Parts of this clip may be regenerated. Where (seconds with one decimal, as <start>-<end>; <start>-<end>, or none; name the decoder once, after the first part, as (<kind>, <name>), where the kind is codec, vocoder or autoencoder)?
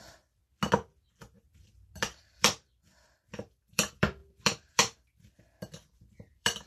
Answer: 0.0-0.4 (vocoder, BigVGAN v2); 1.5-6.7